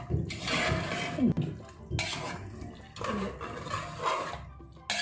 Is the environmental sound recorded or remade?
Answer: recorded